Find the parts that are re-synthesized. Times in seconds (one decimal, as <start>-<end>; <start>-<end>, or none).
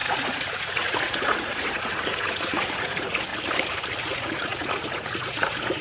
0.0-3.3; 4.0-5.8